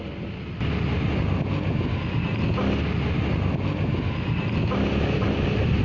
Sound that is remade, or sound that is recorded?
recorded